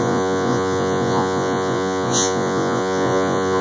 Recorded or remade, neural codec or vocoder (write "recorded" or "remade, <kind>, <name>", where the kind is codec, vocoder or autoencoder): remade, vocoder, Vocos